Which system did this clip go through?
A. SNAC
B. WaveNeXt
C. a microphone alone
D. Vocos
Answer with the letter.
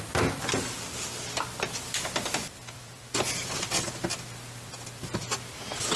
C